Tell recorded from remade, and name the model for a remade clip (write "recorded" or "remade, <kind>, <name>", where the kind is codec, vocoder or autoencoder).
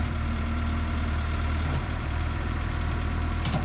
remade, vocoder, BigVGAN v2